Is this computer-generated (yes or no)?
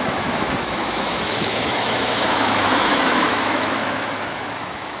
yes